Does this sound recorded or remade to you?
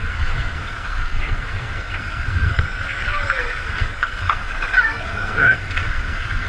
remade